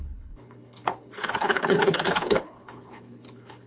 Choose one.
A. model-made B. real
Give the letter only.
A